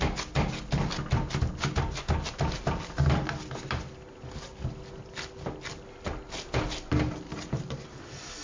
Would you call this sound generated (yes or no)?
no